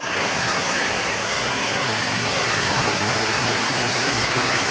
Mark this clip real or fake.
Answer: fake